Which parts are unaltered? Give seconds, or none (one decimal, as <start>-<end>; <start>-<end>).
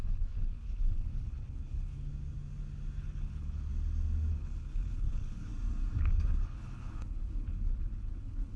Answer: 2.1-3.0; 3.7-4.3; 5.5-6.1